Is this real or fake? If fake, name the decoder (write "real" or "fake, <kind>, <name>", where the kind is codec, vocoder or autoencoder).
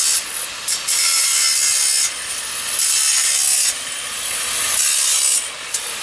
real